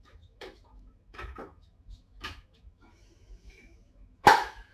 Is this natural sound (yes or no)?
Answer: no